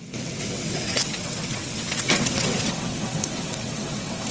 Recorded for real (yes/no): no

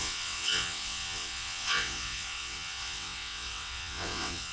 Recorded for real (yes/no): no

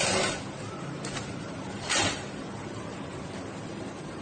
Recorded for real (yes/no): yes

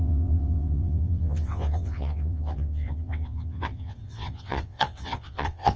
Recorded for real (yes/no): no